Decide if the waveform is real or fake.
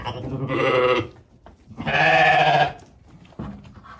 real